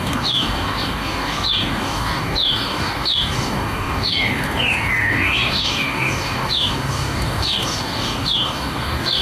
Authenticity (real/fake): fake